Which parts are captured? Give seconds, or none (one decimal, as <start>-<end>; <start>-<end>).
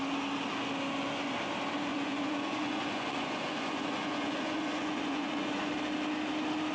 0.0-1.9; 5.7-6.7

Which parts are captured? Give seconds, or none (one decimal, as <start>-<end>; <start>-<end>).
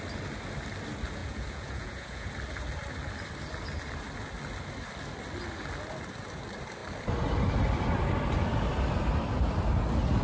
0.0-1.2; 2.3-10.2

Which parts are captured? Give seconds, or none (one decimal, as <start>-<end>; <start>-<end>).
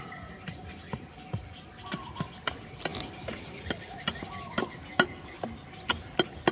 0.0-6.5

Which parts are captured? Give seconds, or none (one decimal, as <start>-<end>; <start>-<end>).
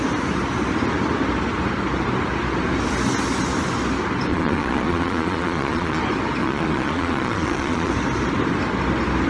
0.0-4.3; 6.0-6.4; 7.9-9.3